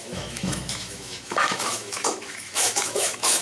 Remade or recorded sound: remade